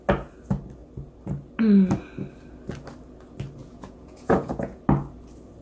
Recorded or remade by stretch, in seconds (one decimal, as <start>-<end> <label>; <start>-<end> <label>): 0.0-3.6 recorded; 3.6-4.8 remade; 4.8-5.6 recorded